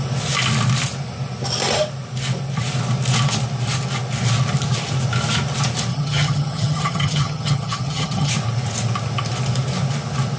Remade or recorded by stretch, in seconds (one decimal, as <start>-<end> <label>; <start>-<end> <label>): 0.0-5.9 recorded; 5.9-8.3 remade; 8.3-10.4 recorded